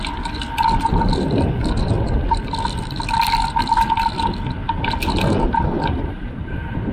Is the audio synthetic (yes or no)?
no